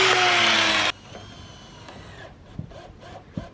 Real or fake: real